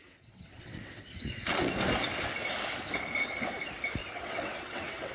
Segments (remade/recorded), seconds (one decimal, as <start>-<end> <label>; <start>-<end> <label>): 0.0-1.7 remade; 1.7-4.0 recorded; 4.0-5.1 remade